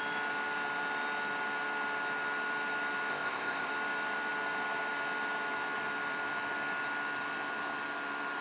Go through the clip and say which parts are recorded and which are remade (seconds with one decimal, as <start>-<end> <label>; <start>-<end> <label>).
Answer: 0.0-3.1 recorded; 3.1-3.7 remade; 3.7-8.4 recorded